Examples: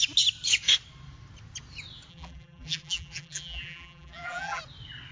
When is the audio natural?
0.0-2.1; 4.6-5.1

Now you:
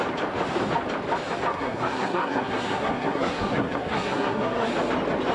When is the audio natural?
0.0-1.5; 4.7-5.3

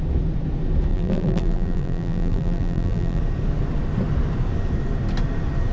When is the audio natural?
0.0-0.9; 3.2-5.7

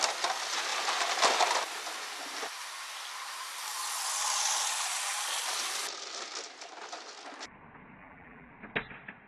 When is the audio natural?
0.0-8.0; 8.5-9.3

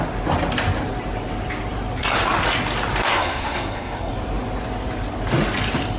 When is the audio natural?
0.0-3.1; 4.1-6.0

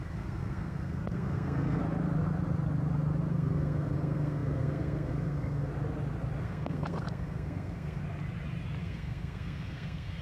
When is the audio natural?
1.8-3.3; 5.7-6.4; 8.0-8.8

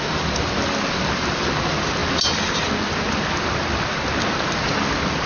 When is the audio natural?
0.0-5.3

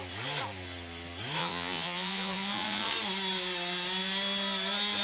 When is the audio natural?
0.0-1.4; 2.9-5.0